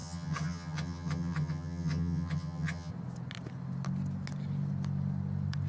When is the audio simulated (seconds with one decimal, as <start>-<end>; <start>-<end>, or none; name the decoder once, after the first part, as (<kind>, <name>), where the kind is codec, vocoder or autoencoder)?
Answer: 0.0-2.9 (vocoder, HiFi-GAN)